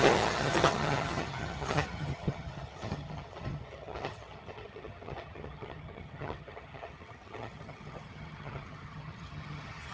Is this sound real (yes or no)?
no